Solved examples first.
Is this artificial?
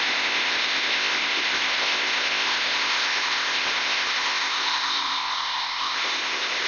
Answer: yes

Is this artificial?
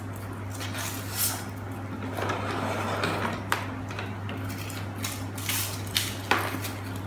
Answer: no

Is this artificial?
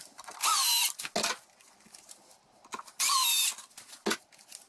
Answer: no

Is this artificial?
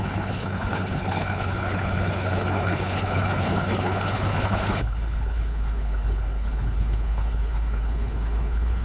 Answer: yes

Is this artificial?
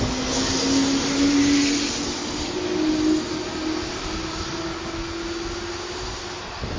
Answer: no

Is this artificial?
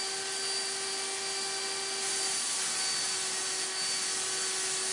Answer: no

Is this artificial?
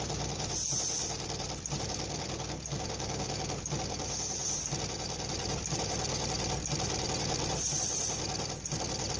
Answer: yes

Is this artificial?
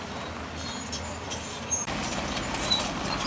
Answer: yes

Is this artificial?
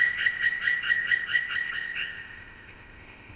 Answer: yes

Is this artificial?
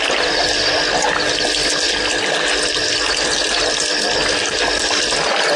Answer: no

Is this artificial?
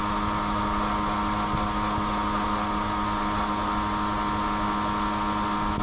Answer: no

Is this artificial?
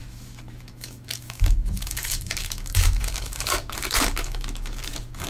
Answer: yes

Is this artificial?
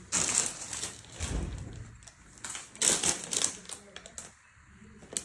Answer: no